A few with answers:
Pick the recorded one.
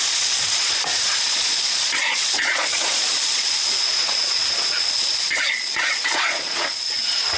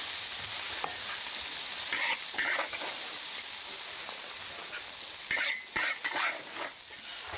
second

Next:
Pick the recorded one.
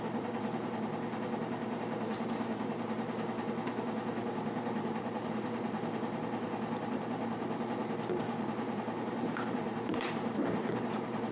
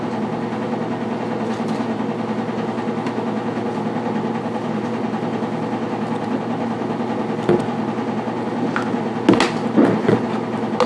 second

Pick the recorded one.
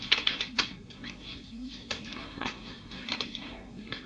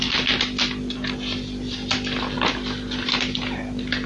second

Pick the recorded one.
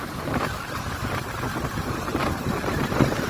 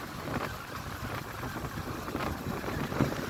second